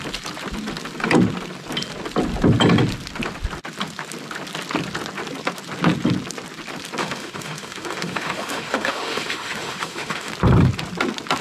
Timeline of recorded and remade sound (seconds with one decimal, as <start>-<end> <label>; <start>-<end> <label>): 0.0-7.0 recorded; 7.0-10.3 remade; 10.3-11.4 recorded